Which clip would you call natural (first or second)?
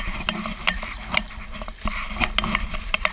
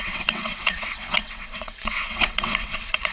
first